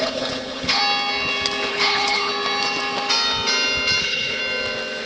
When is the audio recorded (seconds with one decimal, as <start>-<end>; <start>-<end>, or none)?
0.8-1.7; 2.3-4.0; 4.4-5.1